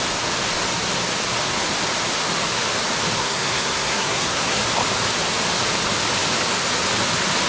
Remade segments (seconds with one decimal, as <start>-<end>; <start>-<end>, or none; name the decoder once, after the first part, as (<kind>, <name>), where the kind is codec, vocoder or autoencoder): 3.2-4.6 (codec, SNAC)